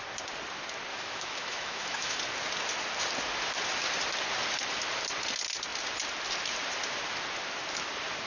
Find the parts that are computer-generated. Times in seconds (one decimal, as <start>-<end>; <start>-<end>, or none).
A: 0.9-2.2